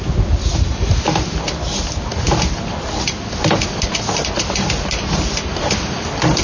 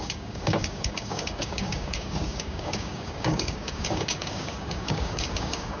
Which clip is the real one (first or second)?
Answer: first